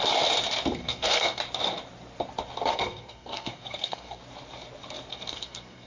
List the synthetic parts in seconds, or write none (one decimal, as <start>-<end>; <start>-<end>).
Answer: 0.8-1.4; 2.7-4.2; 5.1-5.9